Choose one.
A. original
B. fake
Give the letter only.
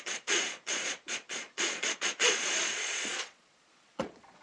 B